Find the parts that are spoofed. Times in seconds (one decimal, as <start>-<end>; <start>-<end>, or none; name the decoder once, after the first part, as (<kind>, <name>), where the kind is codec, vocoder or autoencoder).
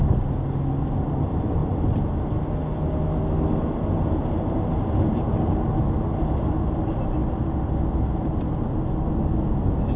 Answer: none